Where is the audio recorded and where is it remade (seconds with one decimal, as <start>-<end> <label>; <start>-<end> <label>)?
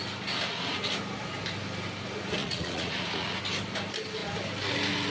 0.0-2.4 recorded; 2.4-3.4 remade; 3.4-5.1 recorded